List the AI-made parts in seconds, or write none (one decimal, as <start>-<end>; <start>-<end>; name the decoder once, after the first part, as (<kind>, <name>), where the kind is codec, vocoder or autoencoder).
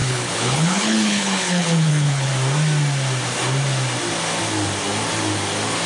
0.0-2.3 (codec, HILCodec)